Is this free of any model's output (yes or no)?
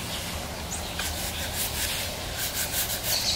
yes